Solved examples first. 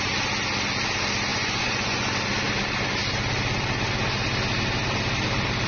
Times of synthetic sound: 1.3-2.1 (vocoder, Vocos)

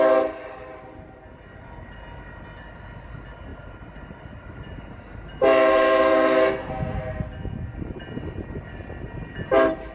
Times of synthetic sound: 5.7-6.7 (codec, SNAC)

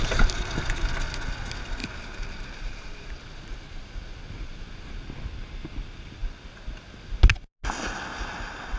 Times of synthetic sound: 1.8-3.2 (vocoder, BigVGAN v2)

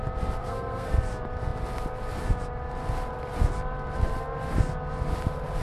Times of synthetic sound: 0.4-0.9 (codec, SNAC)